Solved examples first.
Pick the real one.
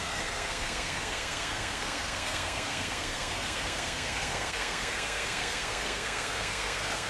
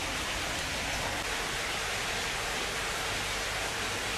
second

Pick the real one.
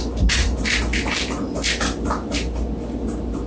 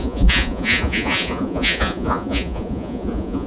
first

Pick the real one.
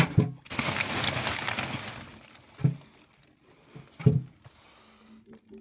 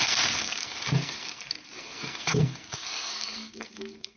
first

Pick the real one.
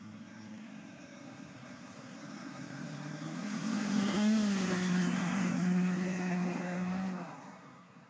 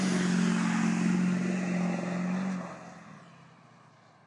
second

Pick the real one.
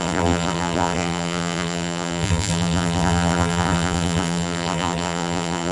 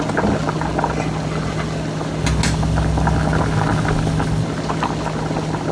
second